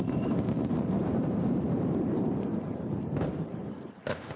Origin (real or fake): fake